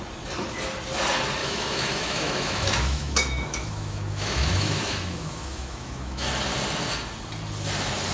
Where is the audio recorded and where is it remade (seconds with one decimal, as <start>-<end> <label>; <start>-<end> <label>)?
0.0-1.4 recorded; 1.4-6.3 remade; 6.3-8.1 recorded